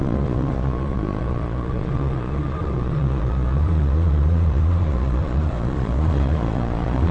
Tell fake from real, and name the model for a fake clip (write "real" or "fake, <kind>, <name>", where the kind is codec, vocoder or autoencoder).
fake, vocoder, Vocos